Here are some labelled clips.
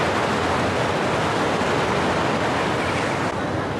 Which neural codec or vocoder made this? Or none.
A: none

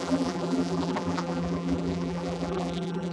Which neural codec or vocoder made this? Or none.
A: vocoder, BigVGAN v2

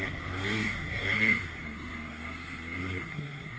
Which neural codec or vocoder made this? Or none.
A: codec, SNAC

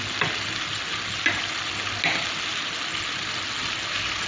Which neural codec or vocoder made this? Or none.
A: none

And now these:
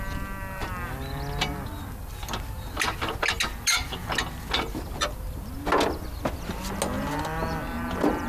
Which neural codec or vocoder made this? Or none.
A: none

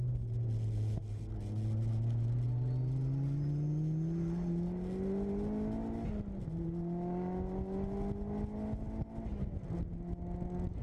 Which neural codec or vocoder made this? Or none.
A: none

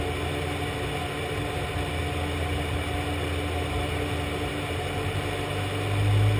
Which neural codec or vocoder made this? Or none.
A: none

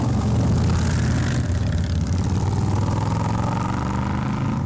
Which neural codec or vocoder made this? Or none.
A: none